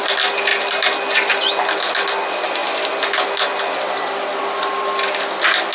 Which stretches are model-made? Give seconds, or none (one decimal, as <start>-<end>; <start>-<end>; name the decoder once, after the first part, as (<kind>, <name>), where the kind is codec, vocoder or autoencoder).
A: none